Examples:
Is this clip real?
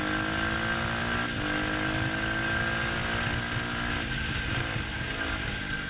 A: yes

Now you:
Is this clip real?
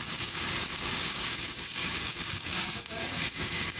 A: no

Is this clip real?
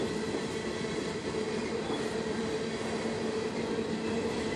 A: yes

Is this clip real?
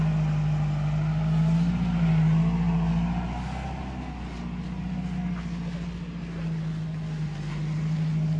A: yes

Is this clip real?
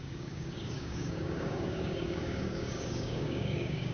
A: no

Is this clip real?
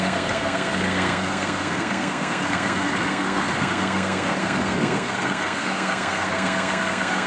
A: no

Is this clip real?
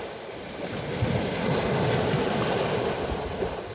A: yes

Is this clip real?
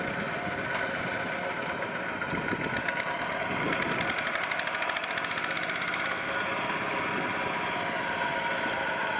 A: yes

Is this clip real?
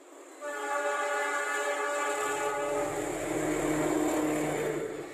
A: yes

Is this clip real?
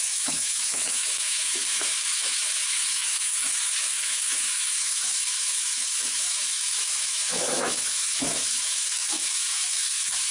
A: no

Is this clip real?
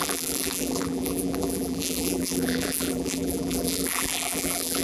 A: no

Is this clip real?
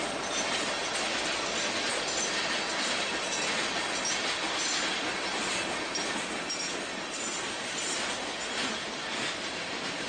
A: yes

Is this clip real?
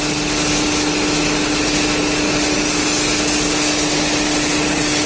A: yes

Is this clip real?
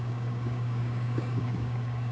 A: no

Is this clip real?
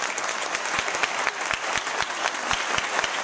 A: yes